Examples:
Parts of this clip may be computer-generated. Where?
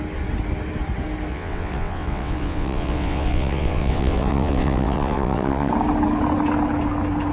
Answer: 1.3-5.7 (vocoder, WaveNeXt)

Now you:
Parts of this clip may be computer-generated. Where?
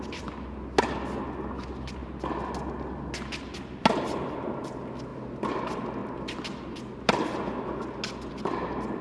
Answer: none